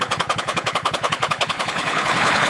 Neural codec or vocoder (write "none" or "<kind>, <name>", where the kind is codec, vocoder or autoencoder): codec, HILCodec